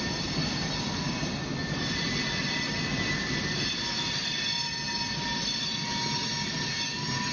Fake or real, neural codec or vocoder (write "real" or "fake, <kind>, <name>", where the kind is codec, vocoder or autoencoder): real